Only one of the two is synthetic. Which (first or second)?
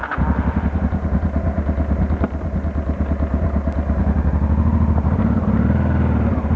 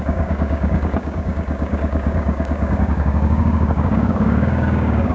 second